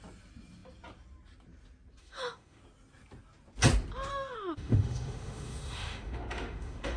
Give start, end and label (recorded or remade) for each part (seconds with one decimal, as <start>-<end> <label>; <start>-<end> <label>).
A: 0.0-2.0 recorded; 2.0-2.6 remade; 2.6-4.1 recorded; 4.1-7.0 remade